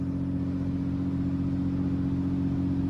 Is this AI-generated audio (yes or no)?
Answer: no